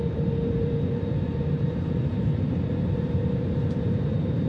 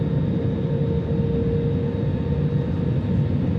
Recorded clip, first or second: second